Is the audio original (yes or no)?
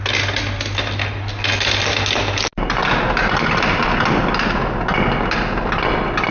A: yes